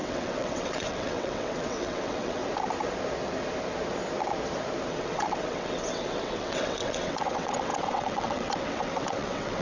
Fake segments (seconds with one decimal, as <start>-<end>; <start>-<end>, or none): 0.0-2.4; 4.9-9.6